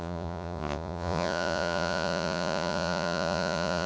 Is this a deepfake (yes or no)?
yes